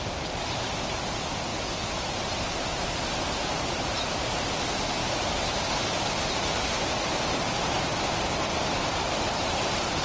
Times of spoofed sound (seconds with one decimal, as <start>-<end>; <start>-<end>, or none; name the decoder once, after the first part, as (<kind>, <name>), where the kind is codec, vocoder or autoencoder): none